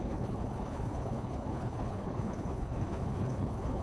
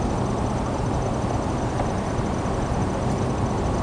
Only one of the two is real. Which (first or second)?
second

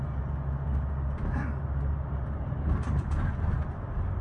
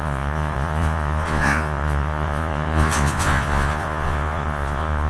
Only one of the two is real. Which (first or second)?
first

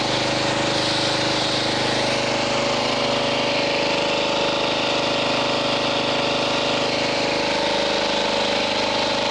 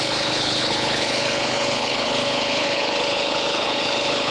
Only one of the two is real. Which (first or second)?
first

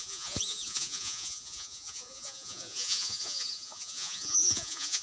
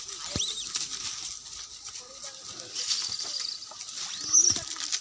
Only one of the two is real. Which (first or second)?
second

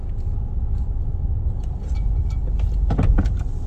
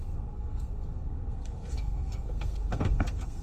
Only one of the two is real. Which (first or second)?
first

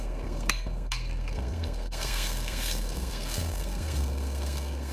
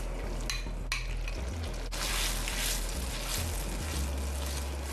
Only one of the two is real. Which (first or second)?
second